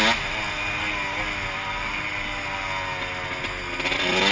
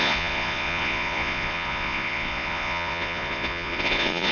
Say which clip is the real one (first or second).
first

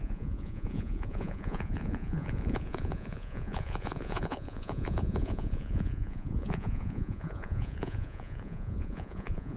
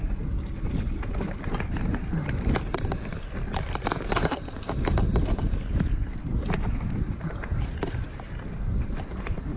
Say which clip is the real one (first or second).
second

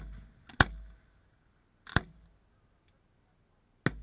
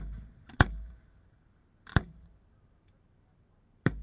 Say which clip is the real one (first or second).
first